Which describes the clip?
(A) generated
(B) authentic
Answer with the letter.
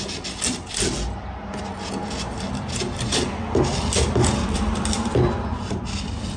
B